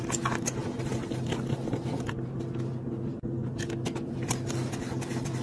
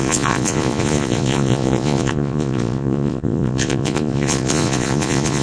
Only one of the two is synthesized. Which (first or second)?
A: second